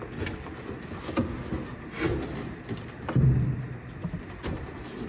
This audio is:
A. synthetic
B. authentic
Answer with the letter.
B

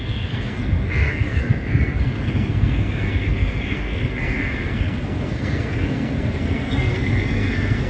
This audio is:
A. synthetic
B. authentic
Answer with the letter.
A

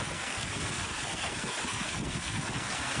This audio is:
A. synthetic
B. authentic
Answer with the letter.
A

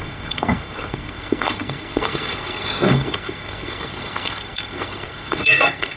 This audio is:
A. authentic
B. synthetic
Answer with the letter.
B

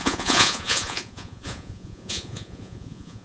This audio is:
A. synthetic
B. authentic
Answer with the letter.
A